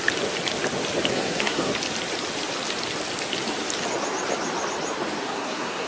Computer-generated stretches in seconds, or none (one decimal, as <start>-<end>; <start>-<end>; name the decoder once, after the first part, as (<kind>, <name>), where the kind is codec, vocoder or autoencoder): 1.1-1.7 (codec, SNAC); 5.2-5.9